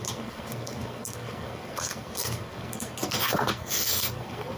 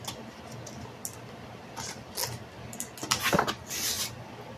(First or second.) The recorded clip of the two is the second